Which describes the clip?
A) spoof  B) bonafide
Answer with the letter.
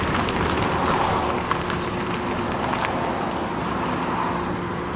B